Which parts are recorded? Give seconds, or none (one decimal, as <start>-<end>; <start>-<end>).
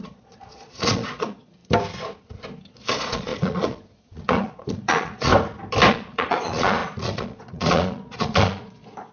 1.6-2.7; 5.3-5.9